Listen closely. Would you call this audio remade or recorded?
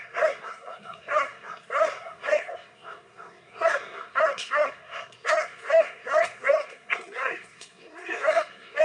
remade